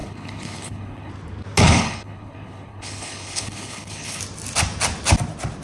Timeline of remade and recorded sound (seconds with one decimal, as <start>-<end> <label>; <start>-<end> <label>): 0.0-1.1 remade; 1.1-1.6 recorded; 1.6-4.2 remade; 4.2-5.6 recorded